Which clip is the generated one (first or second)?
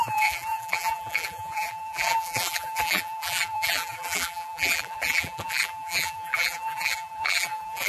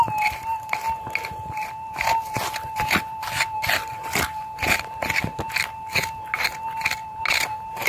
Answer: first